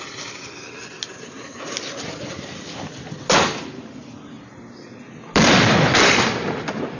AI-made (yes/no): no